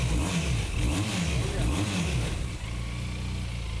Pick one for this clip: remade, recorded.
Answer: recorded